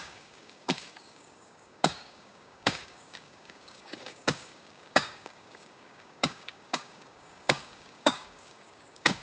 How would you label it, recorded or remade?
remade